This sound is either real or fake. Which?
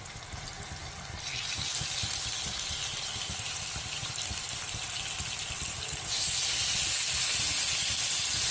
real